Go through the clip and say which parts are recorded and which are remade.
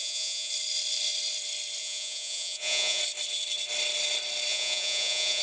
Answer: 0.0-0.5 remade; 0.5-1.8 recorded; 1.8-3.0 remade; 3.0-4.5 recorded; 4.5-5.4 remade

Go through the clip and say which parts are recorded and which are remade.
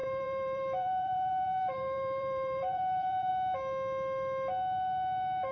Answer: 0.0-3.3 remade; 3.3-5.5 recorded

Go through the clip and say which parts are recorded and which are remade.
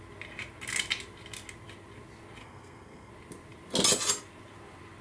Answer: 0.0-2.4 recorded; 2.4-3.1 remade; 3.1-5.0 recorded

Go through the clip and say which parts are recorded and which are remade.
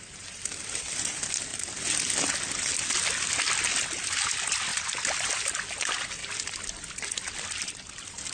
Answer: 0.0-8.3 recorded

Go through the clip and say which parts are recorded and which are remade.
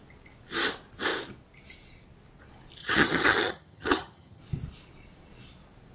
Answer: 0.0-2.8 recorded; 2.8-4.4 remade; 4.4-5.9 recorded